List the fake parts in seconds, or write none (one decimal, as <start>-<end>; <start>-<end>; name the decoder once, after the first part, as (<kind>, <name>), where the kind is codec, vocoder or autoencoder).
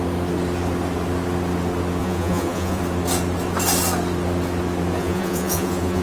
2.0-2.8 (vocoder, Vocos); 5.0-6.0